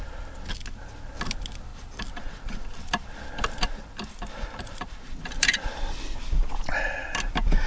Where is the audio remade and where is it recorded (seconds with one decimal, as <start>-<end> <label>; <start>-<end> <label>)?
0.0-1.7 recorded; 1.7-6.3 remade; 6.3-7.7 recorded